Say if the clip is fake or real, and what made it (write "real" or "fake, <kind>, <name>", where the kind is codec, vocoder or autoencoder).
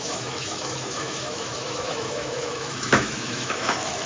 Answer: fake, autoencoder, DAC-VAE